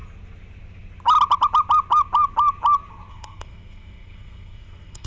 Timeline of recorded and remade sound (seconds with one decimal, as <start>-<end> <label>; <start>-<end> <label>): 0.0-3.1 recorded; 3.1-5.1 remade